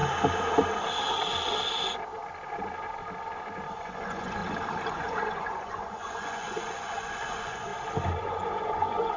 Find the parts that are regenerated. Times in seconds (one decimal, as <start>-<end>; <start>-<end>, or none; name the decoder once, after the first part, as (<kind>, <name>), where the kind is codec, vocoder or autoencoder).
3.7-4.4 (vocoder, Vocos); 4.9-7.7; 8.2-9.2